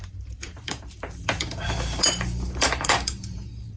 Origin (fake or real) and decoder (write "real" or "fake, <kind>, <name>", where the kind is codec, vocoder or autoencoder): fake, vocoder, BigVGAN v2